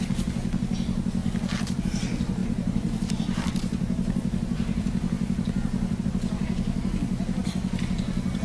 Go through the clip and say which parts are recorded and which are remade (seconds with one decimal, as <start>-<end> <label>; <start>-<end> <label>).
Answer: 0.0-2.4 recorded; 2.4-6.0 remade; 6.0-8.4 recorded

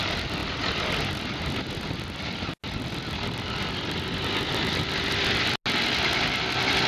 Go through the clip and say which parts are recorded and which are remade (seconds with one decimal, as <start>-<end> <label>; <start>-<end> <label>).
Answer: 0.0-6.9 recorded

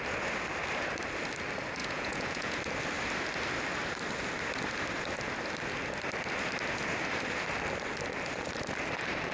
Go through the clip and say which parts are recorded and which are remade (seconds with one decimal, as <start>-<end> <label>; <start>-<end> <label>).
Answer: 0.0-1.8 recorded; 1.8-2.6 remade; 2.6-9.3 recorded